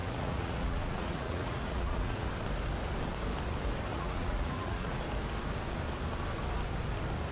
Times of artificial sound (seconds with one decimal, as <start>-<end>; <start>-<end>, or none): 0.0-2.3; 3.9-5.0